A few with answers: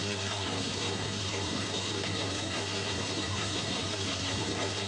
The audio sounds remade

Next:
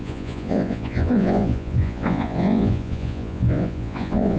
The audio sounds remade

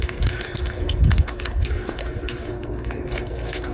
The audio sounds remade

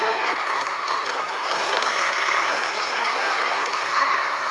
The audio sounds remade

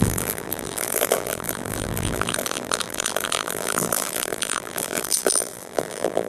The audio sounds remade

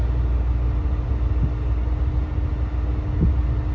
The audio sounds recorded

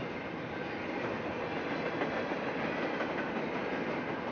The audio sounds recorded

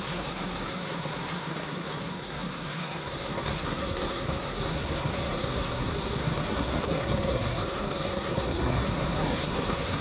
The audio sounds remade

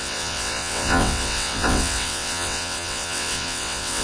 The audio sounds remade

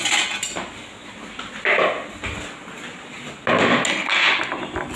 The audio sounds recorded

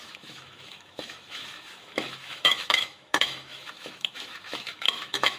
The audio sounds remade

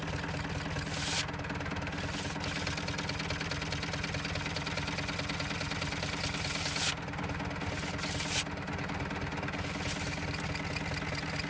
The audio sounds recorded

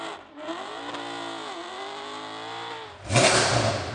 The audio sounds recorded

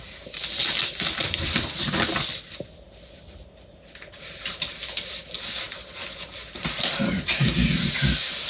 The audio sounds recorded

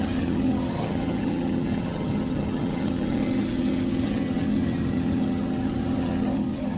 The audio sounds remade